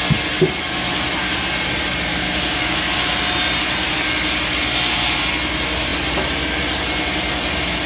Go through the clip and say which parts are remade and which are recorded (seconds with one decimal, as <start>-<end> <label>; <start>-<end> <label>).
0.0-2.1 recorded; 2.1-2.8 remade; 2.8-7.9 recorded